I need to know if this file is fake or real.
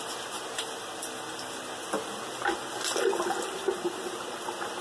real